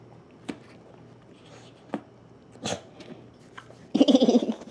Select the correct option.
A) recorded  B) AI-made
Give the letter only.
A